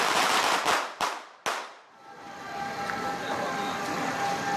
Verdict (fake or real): real